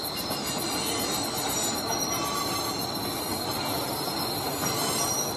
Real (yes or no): yes